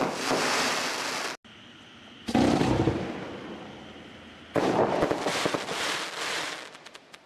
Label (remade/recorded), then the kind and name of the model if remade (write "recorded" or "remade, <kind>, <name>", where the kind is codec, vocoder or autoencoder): recorded